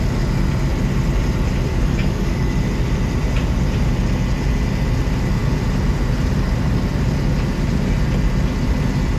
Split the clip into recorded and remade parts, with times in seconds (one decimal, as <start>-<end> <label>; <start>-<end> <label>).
0.0-1.7 recorded; 1.7-2.5 remade; 2.5-9.2 recorded